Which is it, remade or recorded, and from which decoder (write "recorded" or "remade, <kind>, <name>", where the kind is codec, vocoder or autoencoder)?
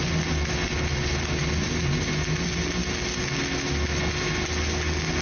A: recorded